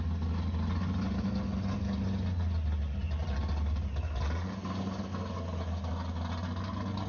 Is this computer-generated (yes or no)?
no